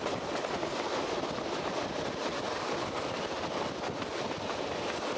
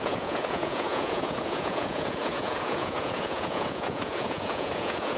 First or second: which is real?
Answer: first